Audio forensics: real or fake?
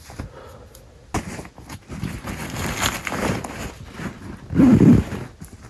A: real